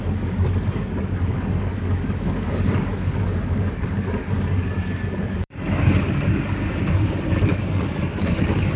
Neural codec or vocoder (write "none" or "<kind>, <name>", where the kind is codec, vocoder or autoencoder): codec, DAC